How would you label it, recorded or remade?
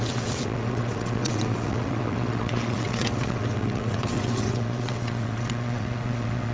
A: remade